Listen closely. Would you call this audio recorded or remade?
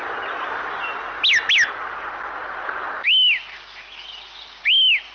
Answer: recorded